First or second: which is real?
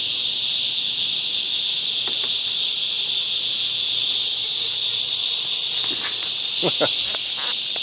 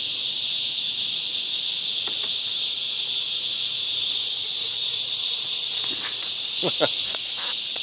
first